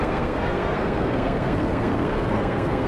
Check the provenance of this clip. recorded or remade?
remade